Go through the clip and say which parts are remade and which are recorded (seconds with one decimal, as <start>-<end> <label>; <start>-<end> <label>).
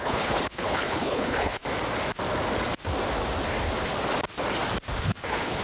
0.0-1.6 remade; 1.6-5.0 recorded; 5.0-5.6 remade